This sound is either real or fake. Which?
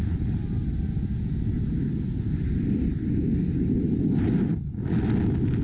real